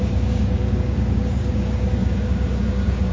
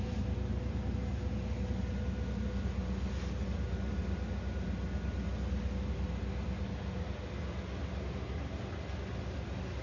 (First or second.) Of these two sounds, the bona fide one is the second